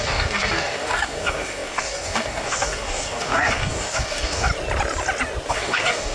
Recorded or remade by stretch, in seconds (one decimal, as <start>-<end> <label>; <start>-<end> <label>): 0.0-4.5 remade; 4.5-5.5 recorded; 5.5-6.1 remade